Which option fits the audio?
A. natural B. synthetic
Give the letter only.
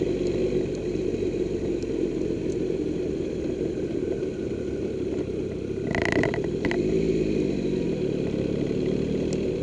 A